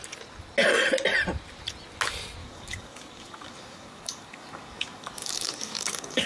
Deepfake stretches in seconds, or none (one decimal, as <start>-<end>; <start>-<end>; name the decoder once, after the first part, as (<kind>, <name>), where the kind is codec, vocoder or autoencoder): 2.4-6.3 (codec, DAC)